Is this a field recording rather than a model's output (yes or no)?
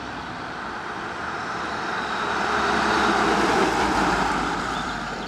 no